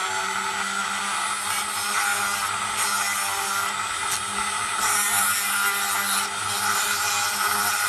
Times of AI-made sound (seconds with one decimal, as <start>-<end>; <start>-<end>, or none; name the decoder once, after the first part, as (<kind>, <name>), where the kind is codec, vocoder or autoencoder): none